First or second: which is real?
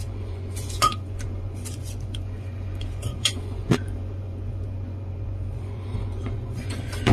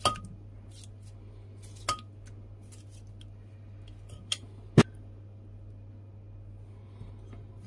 second